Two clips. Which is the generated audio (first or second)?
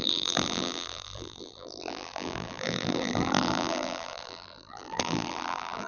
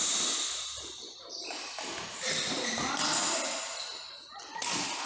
first